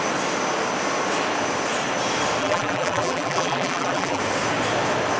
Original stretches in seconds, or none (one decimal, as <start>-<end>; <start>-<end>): 0.0-2.4; 4.2-5.2